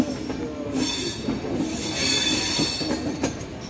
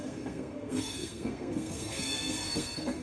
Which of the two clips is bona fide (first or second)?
first